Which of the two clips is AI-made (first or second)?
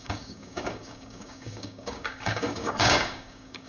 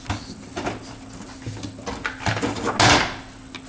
first